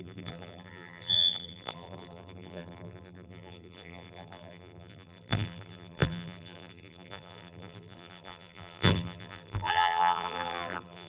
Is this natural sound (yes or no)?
no